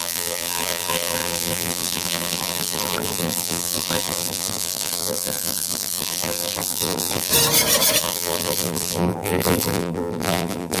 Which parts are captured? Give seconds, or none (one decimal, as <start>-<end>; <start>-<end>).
7.3-8.0